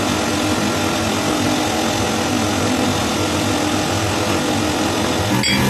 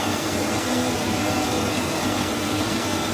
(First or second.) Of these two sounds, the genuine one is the first